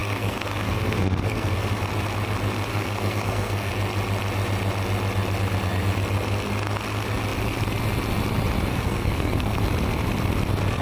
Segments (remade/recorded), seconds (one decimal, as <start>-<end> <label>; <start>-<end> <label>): 0.0-1.8 remade; 1.8-2.7 recorded; 2.7-3.7 remade; 3.7-8.7 recorded; 8.7-9.6 remade; 9.6-10.8 recorded